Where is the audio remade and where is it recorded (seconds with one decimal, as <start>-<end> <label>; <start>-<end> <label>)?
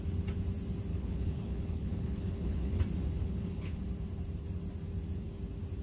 0.0-0.9 recorded; 0.9-2.8 remade; 2.8-3.2 recorded; 3.2-3.8 remade; 3.8-5.8 recorded